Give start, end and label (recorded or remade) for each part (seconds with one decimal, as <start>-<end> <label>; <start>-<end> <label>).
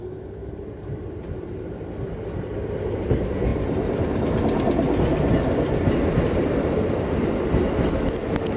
0.0-0.4 recorded; 0.4-1.7 remade; 1.7-8.6 recorded